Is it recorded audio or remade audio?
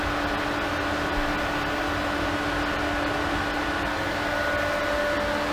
recorded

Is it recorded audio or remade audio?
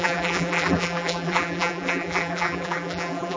remade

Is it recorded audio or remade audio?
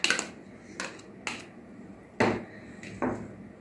recorded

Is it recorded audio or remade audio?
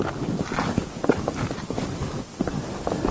recorded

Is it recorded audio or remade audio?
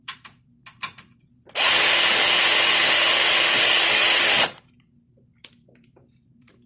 remade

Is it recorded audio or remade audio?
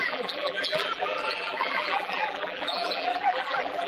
remade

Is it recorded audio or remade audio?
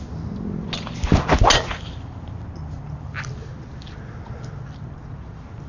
recorded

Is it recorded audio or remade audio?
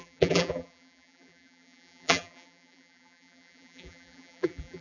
remade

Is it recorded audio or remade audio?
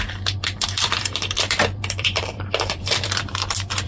remade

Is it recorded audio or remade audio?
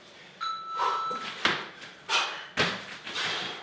recorded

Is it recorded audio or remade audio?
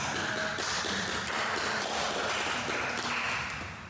remade